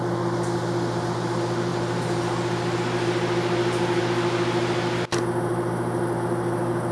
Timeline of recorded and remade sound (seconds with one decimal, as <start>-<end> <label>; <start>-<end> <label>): 0.0-6.9 recorded